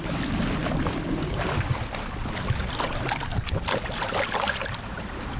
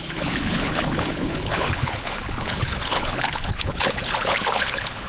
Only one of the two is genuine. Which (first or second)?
first